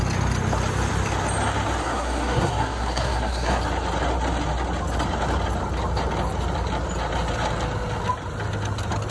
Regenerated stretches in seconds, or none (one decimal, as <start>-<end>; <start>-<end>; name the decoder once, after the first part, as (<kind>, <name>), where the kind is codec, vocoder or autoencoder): 1.8-3.6 (codec, SNAC)